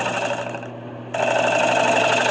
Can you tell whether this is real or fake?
real